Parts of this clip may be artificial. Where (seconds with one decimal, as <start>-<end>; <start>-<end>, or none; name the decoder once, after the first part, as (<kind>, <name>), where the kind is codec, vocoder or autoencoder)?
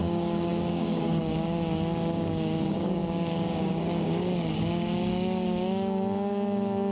0.0-6.9 (codec, DAC)